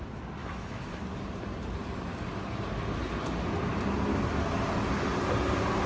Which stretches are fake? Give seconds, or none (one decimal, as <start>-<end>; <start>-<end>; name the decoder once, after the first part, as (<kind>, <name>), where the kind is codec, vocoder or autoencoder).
0.4-1.0 (autoencoder, DAC-VAE)